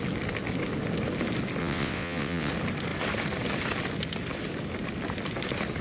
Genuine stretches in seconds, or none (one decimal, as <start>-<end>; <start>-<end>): 0.0-1.6; 2.5-5.8